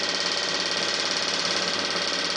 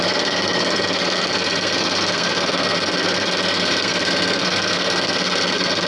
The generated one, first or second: second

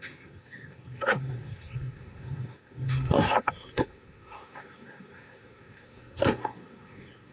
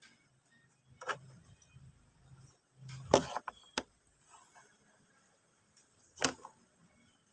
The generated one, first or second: first